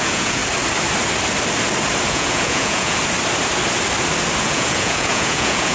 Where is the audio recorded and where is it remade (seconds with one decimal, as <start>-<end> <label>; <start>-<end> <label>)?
0.0-0.4 remade; 0.4-2.1 recorded; 2.1-3.0 remade; 3.0-4.4 recorded; 4.4-5.7 remade